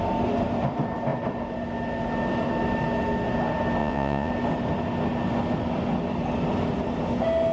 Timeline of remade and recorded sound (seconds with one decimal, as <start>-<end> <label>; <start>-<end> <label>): 0.0-3.8 recorded; 3.8-4.3 remade; 4.3-7.5 recorded